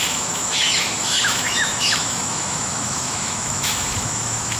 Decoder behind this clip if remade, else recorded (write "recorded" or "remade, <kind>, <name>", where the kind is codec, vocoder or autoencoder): remade, autoencoder, DAC-VAE